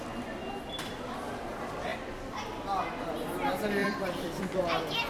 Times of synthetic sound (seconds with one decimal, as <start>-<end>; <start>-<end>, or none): 0.4-1.0; 3.8-4.6